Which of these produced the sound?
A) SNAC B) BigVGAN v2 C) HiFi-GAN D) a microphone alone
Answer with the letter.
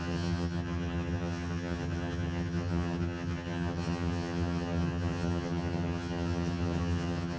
C